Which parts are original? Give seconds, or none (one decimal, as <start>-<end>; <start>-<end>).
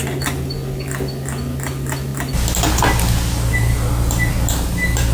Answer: 0.0-5.1